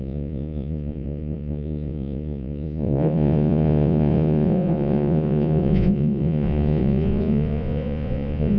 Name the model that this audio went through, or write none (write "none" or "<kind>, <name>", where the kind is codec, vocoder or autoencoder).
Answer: vocoder, Vocos